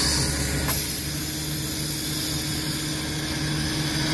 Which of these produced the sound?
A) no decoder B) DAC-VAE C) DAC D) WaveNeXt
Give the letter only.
A